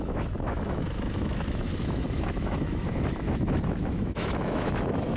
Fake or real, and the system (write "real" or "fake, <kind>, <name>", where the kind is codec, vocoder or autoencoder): fake, autoencoder, DAC-VAE